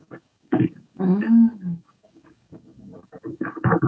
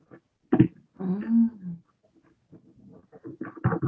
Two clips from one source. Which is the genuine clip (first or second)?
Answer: second